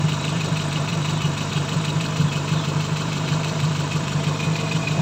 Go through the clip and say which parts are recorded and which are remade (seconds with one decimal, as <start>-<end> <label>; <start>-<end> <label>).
0.0-5.0 remade